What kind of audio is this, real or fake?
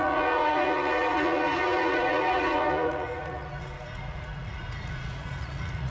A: fake